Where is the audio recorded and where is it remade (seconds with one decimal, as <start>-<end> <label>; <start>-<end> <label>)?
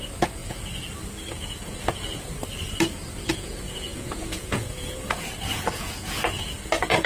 0.0-0.4 remade; 0.4-1.3 recorded; 1.3-2.3 remade; 2.3-3.3 recorded; 3.3-7.1 remade